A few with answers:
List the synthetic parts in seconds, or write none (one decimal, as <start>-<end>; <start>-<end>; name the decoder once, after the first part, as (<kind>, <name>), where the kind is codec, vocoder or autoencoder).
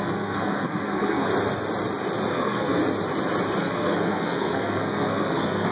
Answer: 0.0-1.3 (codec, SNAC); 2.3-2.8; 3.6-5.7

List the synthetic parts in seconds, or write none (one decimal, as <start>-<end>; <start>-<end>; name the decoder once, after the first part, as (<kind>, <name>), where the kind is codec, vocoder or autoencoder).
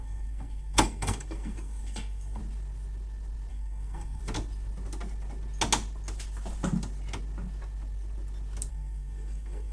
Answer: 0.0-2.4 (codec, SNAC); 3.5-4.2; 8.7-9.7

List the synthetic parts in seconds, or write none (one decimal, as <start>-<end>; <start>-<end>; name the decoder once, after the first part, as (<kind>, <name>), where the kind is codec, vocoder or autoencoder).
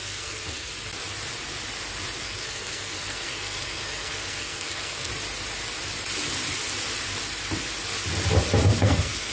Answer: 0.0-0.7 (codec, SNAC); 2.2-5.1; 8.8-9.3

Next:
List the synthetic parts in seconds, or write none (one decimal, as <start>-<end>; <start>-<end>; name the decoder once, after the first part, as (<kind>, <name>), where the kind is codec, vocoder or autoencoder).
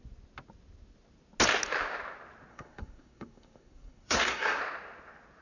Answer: 2.5-4.6 (codec, SNAC)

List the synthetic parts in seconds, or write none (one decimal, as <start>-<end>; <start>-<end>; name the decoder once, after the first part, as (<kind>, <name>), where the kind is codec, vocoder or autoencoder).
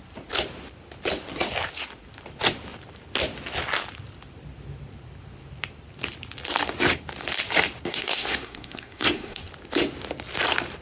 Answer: 7.9-9.5 (codec, SNAC)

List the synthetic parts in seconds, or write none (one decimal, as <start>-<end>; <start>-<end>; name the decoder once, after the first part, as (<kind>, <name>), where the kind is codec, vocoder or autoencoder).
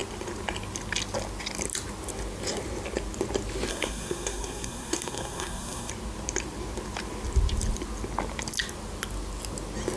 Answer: 3.7-5.9 (codec, SNAC)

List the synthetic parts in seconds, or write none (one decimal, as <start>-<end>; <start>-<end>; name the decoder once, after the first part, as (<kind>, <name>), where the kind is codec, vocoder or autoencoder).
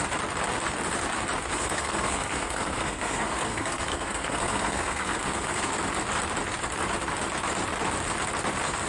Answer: 1.5-5.7 (codec, SNAC)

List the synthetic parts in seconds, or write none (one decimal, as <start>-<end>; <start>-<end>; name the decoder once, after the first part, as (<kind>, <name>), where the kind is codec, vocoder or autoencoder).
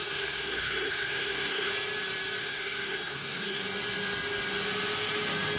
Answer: 0.0-1.7 (codec, SNAC); 2.4-3.6